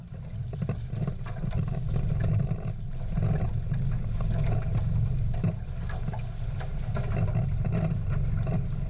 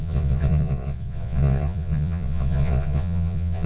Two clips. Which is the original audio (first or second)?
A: first